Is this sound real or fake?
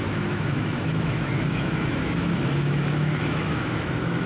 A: fake